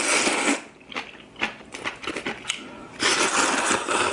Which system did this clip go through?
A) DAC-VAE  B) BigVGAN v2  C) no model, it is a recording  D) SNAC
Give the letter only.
C